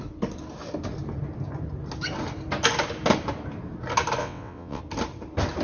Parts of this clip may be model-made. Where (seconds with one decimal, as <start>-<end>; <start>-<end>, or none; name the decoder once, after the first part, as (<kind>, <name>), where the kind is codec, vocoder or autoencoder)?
4.2-4.8 (vocoder, WaveNeXt)